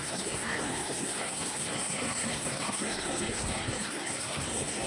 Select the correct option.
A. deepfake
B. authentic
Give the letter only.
A